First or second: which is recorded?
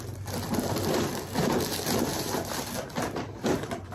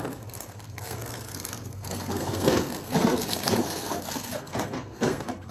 first